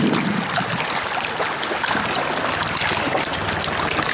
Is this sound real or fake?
real